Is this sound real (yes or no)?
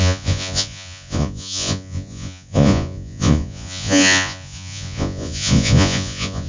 no